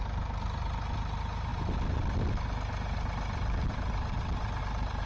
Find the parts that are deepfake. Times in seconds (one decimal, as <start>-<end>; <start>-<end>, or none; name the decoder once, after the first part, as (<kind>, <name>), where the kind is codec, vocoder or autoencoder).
none